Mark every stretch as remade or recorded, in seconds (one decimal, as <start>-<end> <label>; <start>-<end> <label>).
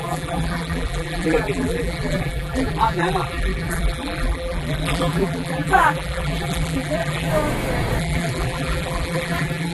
0.0-7.3 remade; 7.3-8.0 recorded; 8.0-9.7 remade